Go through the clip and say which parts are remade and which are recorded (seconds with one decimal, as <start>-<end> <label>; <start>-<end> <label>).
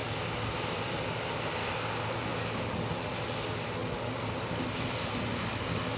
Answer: 0.0-1.0 remade; 1.0-3.8 recorded; 3.8-4.9 remade; 4.9-6.0 recorded